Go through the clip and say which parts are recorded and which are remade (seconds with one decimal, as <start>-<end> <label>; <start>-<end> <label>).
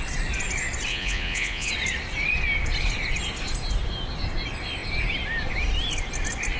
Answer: 0.0-0.9 recorded; 0.9-1.7 remade; 1.7-6.6 recorded